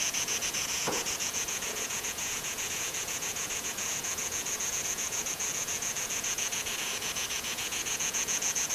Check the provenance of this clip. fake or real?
fake